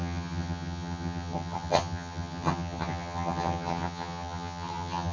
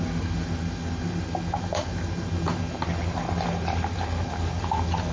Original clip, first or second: second